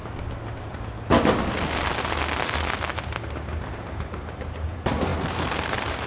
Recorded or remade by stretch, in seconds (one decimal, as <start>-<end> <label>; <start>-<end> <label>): 0.0-3.7 recorded; 3.7-6.1 remade